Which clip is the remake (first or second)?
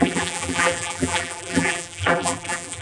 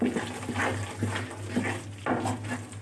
first